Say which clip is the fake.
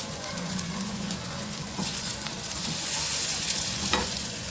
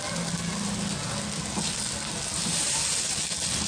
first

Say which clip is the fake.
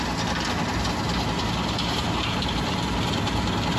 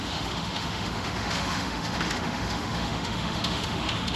second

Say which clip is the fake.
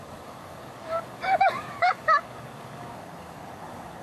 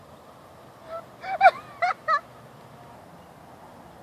first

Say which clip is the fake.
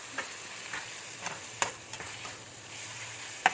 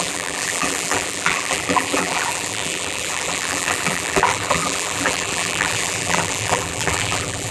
second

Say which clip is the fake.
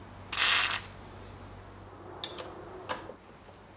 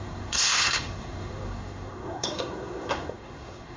second